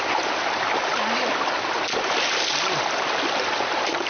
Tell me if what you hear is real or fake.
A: real